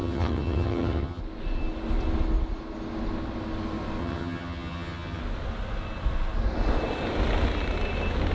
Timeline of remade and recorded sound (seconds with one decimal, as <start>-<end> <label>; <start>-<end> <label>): 0.0-1.2 remade; 1.2-4.0 recorded; 4.0-5.2 remade; 5.2-8.3 recorded